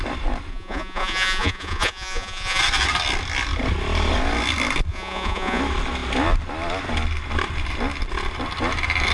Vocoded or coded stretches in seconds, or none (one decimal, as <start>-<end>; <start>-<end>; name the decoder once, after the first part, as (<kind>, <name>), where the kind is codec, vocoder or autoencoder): 0.5-2.6 (vocoder, Vocos); 4.9-5.6